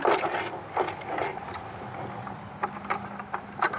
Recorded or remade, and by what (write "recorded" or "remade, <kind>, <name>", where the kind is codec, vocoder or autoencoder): recorded